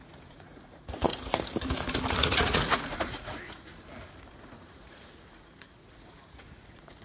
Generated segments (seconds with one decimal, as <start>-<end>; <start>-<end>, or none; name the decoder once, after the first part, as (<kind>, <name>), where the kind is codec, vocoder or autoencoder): 0.0-1.1 (vocoder, Vocos); 2.1-3.7; 4.3-7.0